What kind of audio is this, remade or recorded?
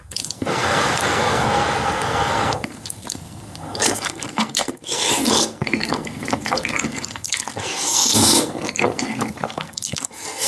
remade